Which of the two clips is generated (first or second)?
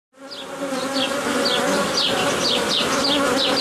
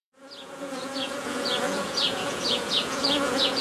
second